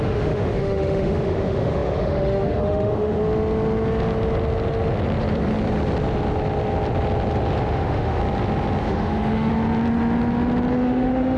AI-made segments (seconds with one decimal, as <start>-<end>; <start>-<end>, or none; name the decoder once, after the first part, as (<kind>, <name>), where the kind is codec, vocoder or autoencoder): 0.0-3.2 (autoencoder, DAC-VAE); 7.7-8.2; 8.8-9.5; 10.7-11.4